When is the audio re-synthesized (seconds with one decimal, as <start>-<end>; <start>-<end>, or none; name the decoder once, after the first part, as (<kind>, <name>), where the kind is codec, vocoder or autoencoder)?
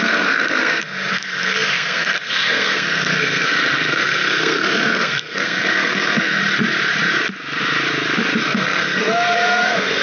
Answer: 0.0-6.4 (codec, SNAC); 8.4-10.0